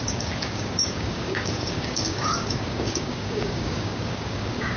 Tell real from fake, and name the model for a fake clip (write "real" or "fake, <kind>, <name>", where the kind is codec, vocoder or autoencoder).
fake, codec, DAC